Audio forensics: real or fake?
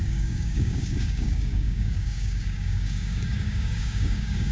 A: fake